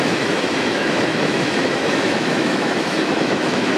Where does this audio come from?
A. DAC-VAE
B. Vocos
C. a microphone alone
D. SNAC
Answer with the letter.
A